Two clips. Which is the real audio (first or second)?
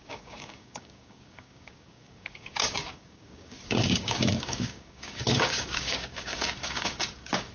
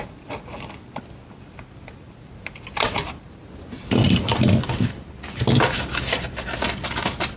second